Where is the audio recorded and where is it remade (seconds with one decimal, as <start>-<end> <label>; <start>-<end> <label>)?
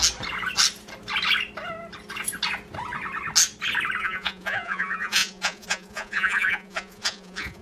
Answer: 0.0-4.0 recorded; 4.0-7.6 remade